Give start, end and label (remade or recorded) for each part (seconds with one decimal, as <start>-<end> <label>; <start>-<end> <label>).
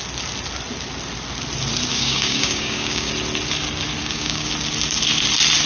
0.0-1.9 recorded; 1.9-3.1 remade; 3.1-4.0 recorded; 4.0-4.5 remade; 4.5-5.7 recorded